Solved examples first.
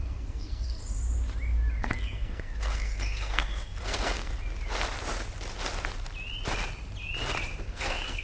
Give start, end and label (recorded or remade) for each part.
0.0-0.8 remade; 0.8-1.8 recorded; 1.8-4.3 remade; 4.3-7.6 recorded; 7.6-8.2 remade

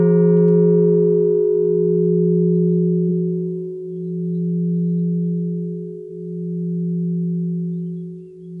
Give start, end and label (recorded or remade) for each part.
0.0-3.1 recorded; 3.1-6.1 remade; 6.1-8.6 recorded

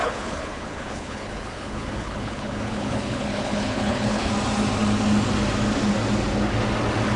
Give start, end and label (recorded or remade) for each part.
0.0-4.3 remade; 4.3-7.2 recorded

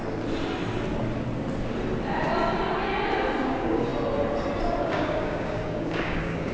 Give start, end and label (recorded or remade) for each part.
0.0-3.4 recorded; 3.4-3.9 remade; 3.9-4.8 recorded; 4.8-6.5 remade

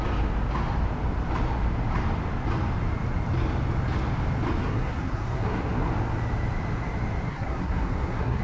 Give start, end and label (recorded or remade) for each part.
0.0-4.6 recorded; 4.6-5.9 remade; 5.9-7.3 recorded; 7.3-8.4 remade